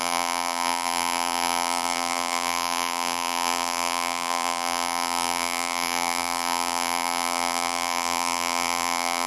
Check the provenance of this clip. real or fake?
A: fake